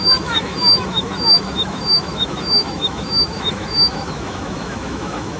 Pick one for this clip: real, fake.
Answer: fake